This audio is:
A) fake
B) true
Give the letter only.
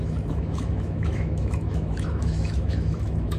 A